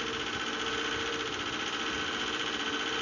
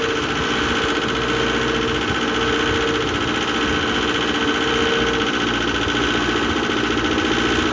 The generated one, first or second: first